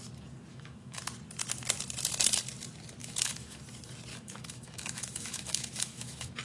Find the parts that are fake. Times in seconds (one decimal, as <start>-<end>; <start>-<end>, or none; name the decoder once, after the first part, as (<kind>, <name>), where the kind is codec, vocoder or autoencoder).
0.5-1.0 (autoencoder, DAC-VAE); 3.0-3.6; 4.1-6.4